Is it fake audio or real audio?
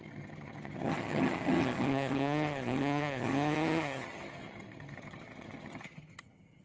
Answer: fake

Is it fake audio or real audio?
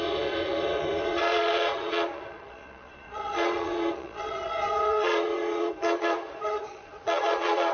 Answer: fake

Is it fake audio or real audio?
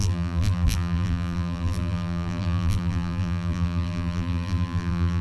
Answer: fake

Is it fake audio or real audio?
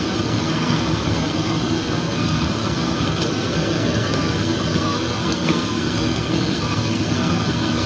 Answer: fake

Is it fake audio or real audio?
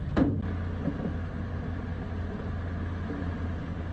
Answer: real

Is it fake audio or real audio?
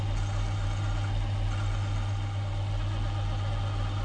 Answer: real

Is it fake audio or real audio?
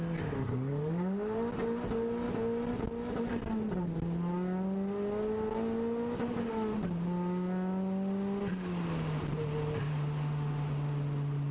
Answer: real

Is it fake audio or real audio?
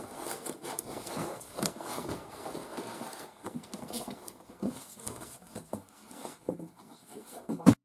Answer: fake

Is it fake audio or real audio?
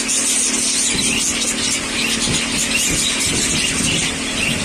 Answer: real